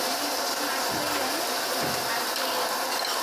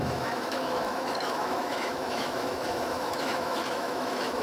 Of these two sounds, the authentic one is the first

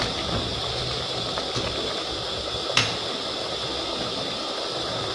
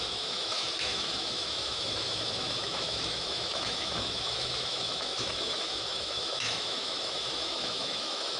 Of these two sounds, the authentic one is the first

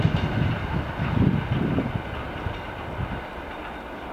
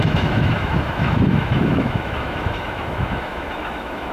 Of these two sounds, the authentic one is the first